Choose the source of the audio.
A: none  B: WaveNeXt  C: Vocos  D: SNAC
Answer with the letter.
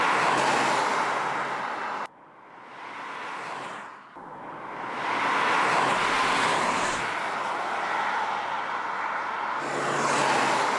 A